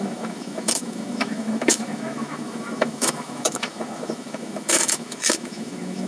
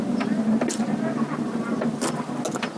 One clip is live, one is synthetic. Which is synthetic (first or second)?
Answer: first